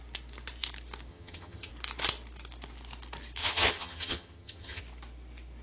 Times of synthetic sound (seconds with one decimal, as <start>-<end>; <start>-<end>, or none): 1.1-1.7; 3.4-4.8